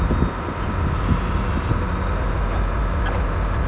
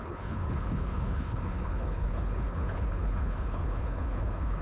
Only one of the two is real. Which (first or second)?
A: first